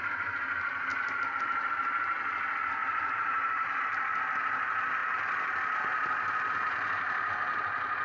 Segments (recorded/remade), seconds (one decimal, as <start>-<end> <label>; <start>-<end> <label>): 0.0-0.9 recorded; 0.9-1.7 remade; 1.7-2.8 recorded; 2.8-3.8 remade; 3.8-8.0 recorded